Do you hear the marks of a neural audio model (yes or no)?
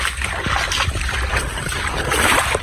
no